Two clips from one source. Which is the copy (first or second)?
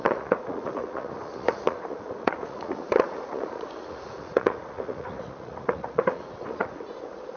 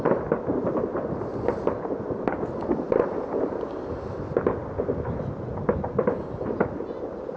first